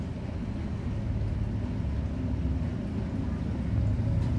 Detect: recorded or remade recorded